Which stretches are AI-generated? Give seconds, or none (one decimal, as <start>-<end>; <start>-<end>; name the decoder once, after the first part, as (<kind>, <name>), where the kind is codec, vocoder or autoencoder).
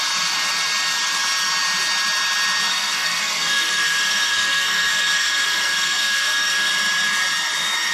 2.7-6.7 (codec, SNAC)